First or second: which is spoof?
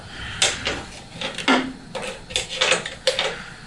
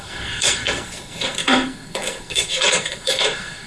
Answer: second